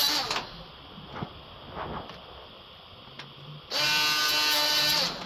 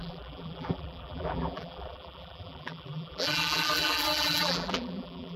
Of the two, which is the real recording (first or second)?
first